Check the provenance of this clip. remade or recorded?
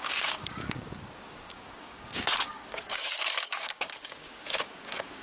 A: remade